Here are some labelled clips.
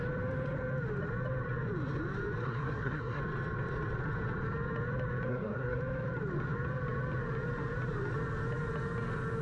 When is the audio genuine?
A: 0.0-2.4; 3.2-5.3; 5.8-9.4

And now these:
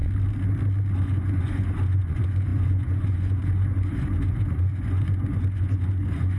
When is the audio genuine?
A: 0.0-0.9

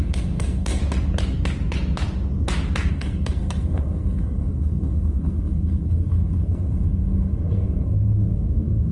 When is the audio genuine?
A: 0.8-2.9